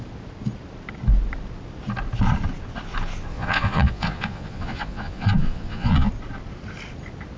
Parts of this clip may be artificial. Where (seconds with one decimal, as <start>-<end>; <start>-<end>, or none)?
3.3-6.1